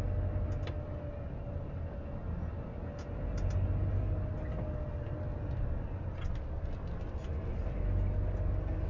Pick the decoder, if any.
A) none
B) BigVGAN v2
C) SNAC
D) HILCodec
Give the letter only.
A